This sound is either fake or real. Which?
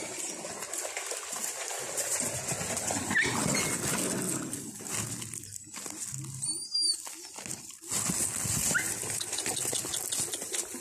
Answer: real